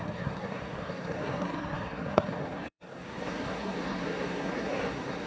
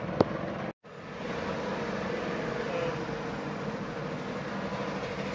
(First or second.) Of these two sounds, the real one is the second